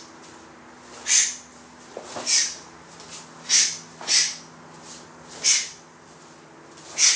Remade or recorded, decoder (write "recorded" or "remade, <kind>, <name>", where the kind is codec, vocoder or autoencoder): recorded